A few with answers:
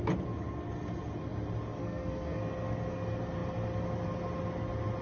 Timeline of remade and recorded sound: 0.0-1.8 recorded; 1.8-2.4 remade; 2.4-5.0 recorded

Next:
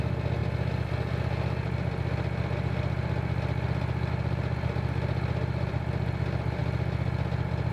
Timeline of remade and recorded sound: 0.0-7.7 recorded

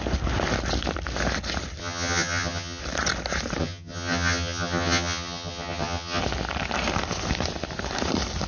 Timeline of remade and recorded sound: 0.0-1.8 recorded; 1.8-2.8 remade; 2.8-3.6 recorded; 3.6-6.2 remade; 6.2-8.5 recorded

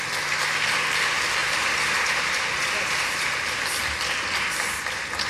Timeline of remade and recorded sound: 0.0-1.4 recorded; 1.4-3.6 remade; 3.6-5.3 recorded

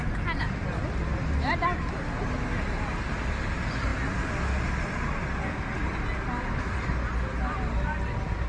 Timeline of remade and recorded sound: 0.0-8.5 recorded

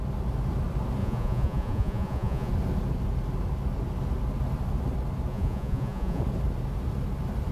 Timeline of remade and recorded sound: 0.0-1.0 recorded; 1.0-2.5 remade; 2.5-5.3 recorded; 5.3-6.2 remade; 6.2-7.5 recorded